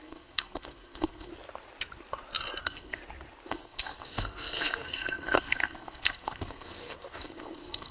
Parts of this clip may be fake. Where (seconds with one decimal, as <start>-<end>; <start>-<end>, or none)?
0.0-1.3; 2.6-3.0; 3.5-7.9